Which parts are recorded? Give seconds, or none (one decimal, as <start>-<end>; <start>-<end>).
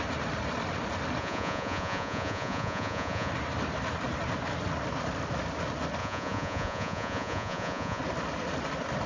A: 0.0-1.2; 3.3-6.0; 8.0-9.1